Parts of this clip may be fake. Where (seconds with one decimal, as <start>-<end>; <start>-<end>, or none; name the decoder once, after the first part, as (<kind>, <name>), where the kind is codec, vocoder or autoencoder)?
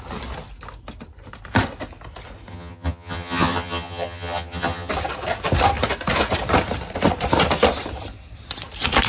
2.5-4.9 (vocoder, HiFi-GAN)